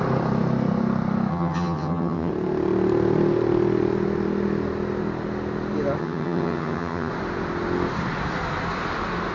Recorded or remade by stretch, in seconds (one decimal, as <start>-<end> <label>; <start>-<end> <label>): 0.0-1.3 recorded; 1.3-2.3 remade; 2.3-6.0 recorded; 6.0-7.1 remade; 7.1-9.3 recorded